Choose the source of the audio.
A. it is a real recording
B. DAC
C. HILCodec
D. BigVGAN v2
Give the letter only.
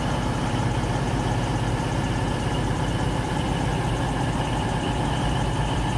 D